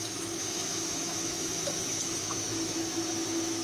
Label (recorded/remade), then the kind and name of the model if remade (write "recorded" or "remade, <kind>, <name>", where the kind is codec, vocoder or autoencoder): remade, autoencoder, DAC-VAE